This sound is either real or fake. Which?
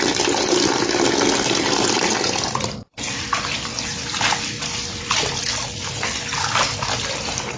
real